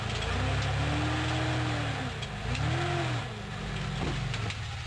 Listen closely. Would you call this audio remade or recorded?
recorded